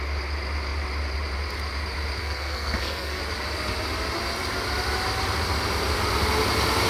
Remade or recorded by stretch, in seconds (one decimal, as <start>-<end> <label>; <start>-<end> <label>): 0.0-2.2 recorded; 2.2-3.2 remade; 3.2-6.9 recorded